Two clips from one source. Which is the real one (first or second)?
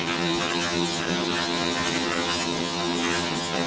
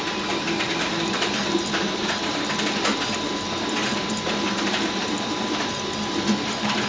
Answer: second